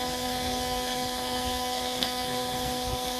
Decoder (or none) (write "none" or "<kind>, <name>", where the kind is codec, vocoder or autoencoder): codec, SNAC